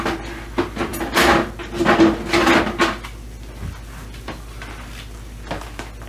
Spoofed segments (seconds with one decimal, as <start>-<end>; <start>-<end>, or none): none